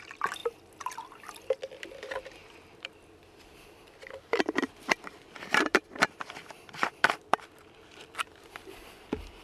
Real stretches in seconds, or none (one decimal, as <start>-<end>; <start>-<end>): 0.4-1.2